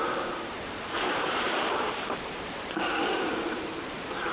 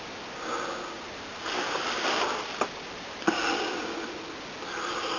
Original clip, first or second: second